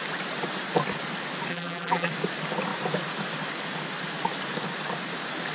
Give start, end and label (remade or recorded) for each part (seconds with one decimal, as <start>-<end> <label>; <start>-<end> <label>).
0.0-1.5 recorded; 1.5-2.1 remade; 2.1-5.5 recorded